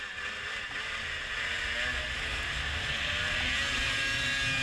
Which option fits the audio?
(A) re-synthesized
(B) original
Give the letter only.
B